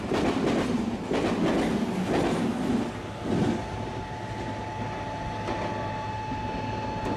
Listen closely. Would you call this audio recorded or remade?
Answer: recorded